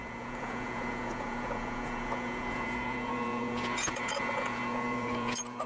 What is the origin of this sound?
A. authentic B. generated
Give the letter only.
B